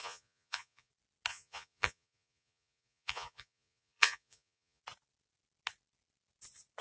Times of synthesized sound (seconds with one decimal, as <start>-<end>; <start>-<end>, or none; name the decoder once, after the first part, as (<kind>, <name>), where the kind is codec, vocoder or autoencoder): 0.0-0.9 (vocoder, Vocos); 1.3-4.8